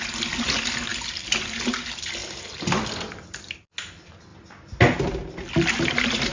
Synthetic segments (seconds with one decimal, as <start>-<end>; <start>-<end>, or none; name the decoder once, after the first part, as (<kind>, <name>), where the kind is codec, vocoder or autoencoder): none

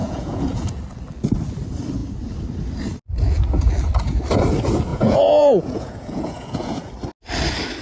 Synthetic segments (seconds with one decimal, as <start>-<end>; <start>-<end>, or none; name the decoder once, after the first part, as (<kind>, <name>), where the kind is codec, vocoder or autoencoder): 0.0-0.8 (vocoder, Vocos); 4.9-6.9

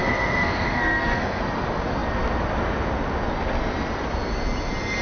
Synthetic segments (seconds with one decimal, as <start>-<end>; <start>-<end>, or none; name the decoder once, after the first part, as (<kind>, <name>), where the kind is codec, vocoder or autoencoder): 0.0-1.4 (codec, SNAC)

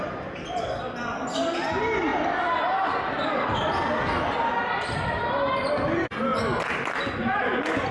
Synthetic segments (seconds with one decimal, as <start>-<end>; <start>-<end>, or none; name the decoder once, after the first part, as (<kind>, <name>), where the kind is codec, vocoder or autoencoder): none

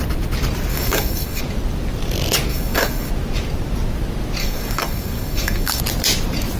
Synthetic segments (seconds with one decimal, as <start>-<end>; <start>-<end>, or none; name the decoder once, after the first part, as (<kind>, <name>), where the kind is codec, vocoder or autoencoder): 0.7-1.4 (codec, DAC); 2.5-3.1; 4.4-5.8

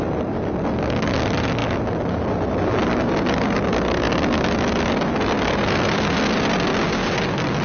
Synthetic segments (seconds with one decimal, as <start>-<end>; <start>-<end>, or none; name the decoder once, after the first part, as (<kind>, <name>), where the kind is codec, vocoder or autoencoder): none